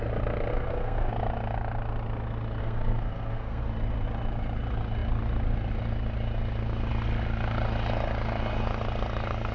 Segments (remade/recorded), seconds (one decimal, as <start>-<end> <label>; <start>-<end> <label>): 0.0-0.5 recorded; 0.5-1.1 remade; 1.1-2.6 recorded; 2.6-3.6 remade; 3.6-9.5 recorded